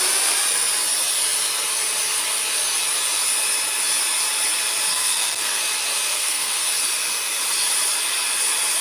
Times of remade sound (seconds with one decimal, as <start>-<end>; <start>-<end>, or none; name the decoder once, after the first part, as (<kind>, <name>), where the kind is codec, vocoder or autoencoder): 4.9-5.6 (codec, SNAC); 6.1-6.7